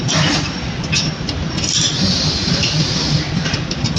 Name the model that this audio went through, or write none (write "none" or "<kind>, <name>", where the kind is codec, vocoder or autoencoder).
none